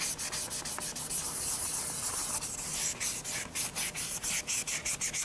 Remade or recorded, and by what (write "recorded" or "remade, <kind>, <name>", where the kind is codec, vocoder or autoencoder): recorded